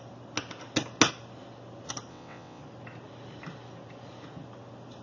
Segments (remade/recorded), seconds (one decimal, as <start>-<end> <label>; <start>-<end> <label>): 0.0-2.1 recorded; 2.1-2.6 remade; 2.6-5.0 recorded